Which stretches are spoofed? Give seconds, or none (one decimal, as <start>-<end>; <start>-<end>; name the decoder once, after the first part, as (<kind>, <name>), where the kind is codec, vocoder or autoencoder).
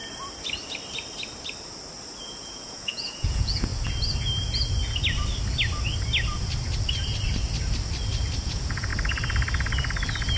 2.2-3.7 (vocoder, Vocos); 8.4-8.9